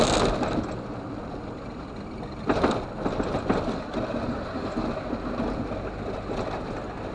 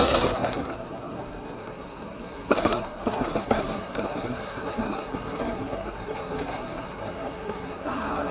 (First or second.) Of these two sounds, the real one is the first